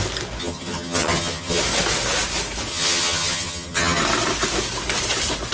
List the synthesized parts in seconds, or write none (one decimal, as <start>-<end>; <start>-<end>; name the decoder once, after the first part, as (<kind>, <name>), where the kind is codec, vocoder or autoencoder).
0.4-1.6 (vocoder, HiFi-GAN); 2.7-4.0